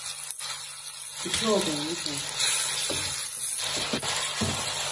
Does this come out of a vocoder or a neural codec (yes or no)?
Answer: no